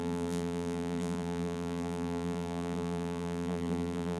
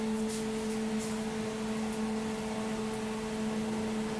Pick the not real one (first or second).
first